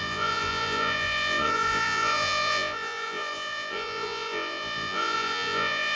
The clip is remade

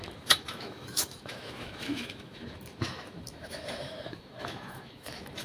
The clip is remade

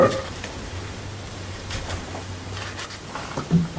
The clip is remade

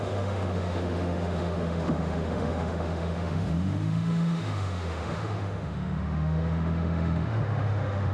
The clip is remade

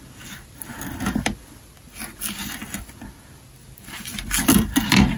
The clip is recorded